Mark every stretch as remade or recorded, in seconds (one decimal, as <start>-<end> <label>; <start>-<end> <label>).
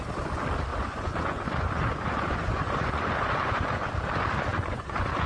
0.0-0.7 recorded; 0.7-3.9 remade; 3.9-4.5 recorded; 4.5-5.3 remade